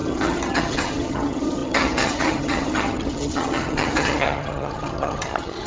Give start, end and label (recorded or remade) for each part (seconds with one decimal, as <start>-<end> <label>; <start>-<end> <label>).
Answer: 0.0-5.7 remade